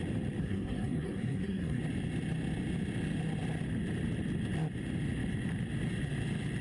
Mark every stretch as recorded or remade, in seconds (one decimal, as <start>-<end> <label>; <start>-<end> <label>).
0.0-0.4 recorded; 0.4-1.8 remade; 1.8-6.6 recorded